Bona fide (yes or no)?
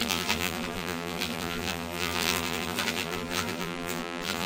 no